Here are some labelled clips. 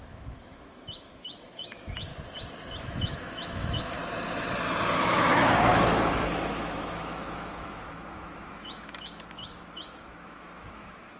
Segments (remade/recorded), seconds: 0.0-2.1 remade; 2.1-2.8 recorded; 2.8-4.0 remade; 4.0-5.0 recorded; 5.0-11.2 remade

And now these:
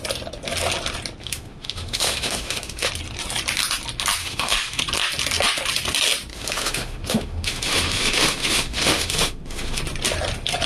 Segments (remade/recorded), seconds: 0.0-1.2 recorded; 1.2-2.9 remade; 2.9-4.2 recorded; 4.2-4.8 remade; 4.8-6.3 recorded; 6.3-9.8 remade; 9.8-10.7 recorded

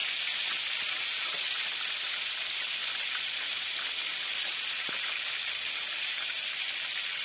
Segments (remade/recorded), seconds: 0.0-7.2 recorded